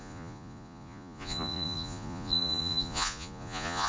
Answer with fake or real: fake